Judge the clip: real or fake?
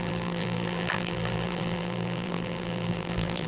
fake